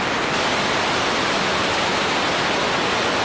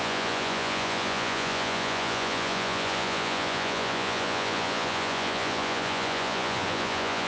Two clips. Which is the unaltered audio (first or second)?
first